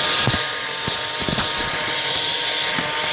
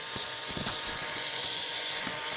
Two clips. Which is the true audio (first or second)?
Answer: first